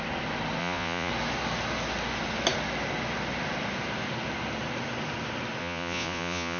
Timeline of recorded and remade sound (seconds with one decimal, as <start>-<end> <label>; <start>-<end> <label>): 0.0-0.6 recorded; 0.6-1.1 remade; 1.1-5.6 recorded; 5.6-6.6 remade